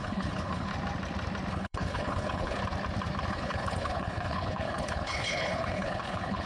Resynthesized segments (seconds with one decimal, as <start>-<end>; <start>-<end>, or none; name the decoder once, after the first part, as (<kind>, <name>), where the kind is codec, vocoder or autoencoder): 0.0-0.7 (codec, HILCodec); 1.5-2.6; 3.3-6.5